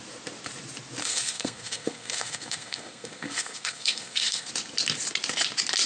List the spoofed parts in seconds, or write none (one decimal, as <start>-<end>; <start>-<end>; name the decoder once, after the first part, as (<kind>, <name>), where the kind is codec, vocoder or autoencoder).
1.0-4.5 (codec, SNAC)